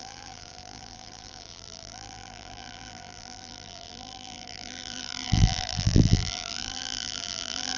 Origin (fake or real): fake